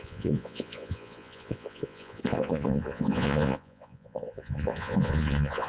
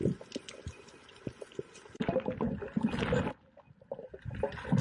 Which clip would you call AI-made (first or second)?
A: first